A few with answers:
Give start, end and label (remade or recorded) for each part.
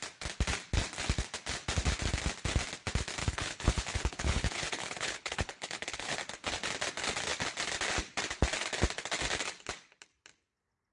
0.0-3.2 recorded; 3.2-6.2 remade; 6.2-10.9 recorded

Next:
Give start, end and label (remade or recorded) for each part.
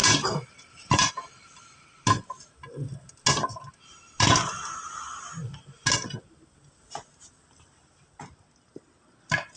0.0-1.1 remade; 1.1-9.6 recorded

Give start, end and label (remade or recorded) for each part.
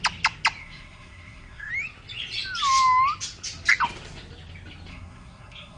0.0-0.6 recorded; 0.6-1.7 remade; 1.7-4.9 recorded; 4.9-5.8 remade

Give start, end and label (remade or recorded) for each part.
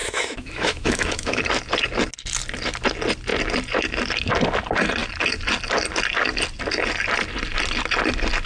0.0-1.4 remade; 1.4-8.5 recorded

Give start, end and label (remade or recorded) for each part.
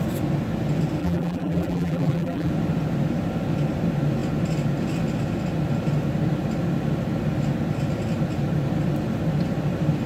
0.0-1.0 recorded; 1.0-2.5 remade; 2.5-10.1 recorded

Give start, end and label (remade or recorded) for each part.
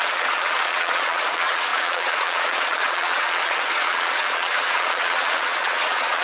0.0-6.2 remade